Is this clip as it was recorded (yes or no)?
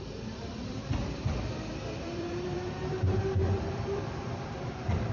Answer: no